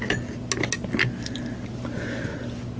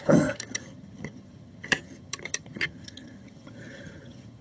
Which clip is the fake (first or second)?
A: second